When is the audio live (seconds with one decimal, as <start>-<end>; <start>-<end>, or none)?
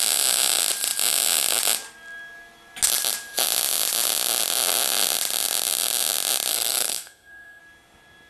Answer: 0.0-6.5; 7.6-8.3